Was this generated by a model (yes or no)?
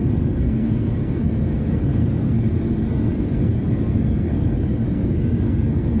yes